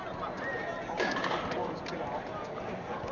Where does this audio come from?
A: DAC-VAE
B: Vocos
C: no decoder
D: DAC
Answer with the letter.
C